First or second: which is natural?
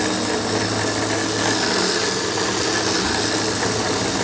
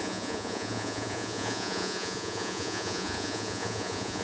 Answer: first